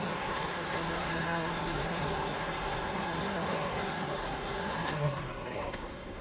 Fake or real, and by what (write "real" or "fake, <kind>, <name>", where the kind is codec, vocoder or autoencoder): fake, codec, SNAC